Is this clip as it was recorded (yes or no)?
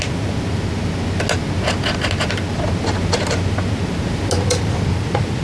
yes